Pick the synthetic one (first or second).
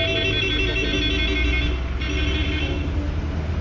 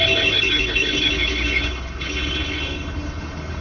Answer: second